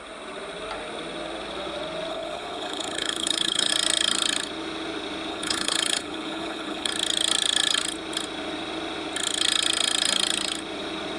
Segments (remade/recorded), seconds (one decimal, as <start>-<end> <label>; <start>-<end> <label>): 0.0-2.1 recorded; 2.1-3.7 remade; 3.7-5.3 recorded; 5.3-6.9 remade; 6.9-11.2 recorded